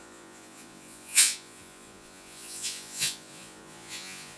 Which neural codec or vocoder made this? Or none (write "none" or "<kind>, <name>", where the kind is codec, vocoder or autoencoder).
vocoder, Vocos